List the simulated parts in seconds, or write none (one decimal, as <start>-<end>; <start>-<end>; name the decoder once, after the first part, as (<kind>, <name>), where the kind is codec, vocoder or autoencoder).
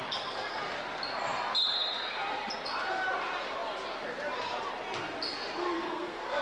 5.6-6.4 (codec, SNAC)